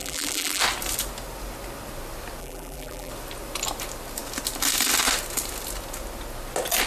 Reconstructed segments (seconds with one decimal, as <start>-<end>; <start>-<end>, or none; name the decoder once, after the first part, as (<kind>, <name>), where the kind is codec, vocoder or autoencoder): 0.0-0.6 (vocoder, BigVGAN v2); 2.4-3.1